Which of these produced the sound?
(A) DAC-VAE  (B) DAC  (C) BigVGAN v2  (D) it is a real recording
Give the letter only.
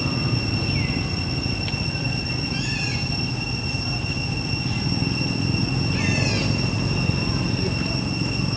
D